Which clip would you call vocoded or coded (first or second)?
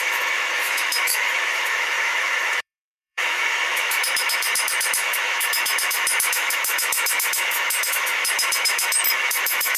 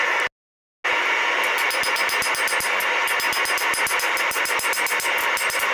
first